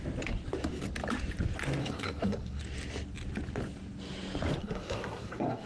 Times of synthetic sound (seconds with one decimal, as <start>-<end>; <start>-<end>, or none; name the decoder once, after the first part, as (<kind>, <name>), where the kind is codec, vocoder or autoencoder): 1.8-2.6 (codec, SNAC); 4.6-5.7